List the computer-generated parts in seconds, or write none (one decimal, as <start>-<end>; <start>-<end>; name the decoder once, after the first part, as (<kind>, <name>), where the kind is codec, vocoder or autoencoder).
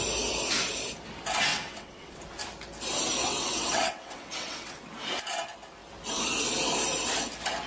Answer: 1.5-2.2 (vocoder, WaveNeXt); 3.2-4.8